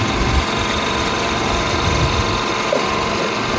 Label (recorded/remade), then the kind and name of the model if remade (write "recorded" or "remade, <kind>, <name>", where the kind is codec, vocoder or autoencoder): recorded